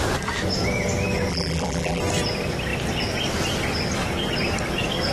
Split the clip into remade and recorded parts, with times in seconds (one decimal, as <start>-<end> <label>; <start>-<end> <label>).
0.0-1.3 recorded; 1.3-2.0 remade; 2.0-5.1 recorded